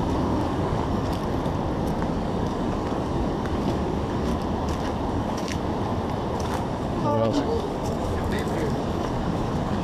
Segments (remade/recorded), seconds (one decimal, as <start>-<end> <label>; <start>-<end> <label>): 0.0-1.2 remade; 1.2-2.1 recorded; 2.1-4.3 remade; 4.3-5.1 recorded; 5.1-5.5 remade; 5.5-6.4 recorded; 6.4-9.8 remade